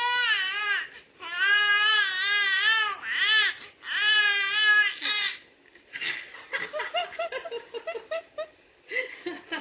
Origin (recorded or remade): recorded